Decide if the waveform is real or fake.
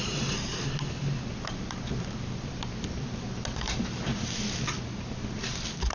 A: real